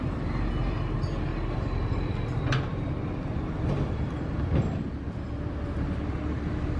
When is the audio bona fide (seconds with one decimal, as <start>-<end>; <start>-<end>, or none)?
0.0-6.8